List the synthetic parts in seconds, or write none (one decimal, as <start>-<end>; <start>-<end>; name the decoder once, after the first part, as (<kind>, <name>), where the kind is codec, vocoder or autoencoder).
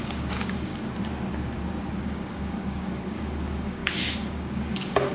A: 0.0-0.7 (codec, DAC); 2.0-5.1